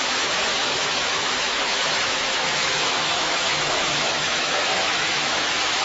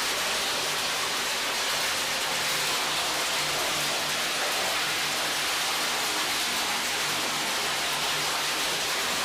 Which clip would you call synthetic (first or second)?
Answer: first